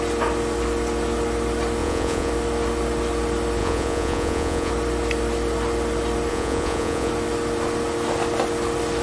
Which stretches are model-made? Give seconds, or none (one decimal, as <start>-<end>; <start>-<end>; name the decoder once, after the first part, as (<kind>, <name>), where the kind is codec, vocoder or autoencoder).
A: 1.8-2.3 (vocoder, Vocos); 3.6-4.7; 6.3-7.1

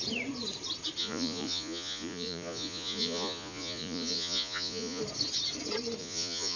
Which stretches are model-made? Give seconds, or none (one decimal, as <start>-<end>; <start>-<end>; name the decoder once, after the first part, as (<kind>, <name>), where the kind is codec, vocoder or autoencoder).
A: 1.0-5.0 (vocoder, Vocos); 6.0-6.6

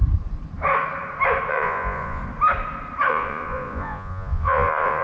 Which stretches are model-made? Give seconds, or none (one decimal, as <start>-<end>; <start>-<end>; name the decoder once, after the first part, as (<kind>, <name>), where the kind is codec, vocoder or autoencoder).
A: 1.5-2.2 (vocoder, Vocos); 3.1-5.0